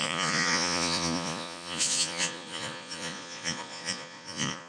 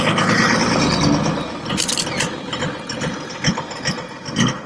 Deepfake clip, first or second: first